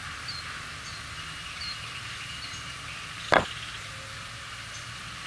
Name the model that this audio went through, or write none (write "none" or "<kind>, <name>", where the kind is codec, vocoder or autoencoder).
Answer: none